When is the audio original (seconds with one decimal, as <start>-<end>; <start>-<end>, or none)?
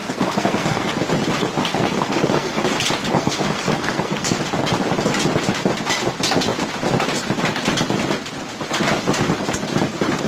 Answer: 0.9-1.6; 2.6-3.0; 4.4-10.3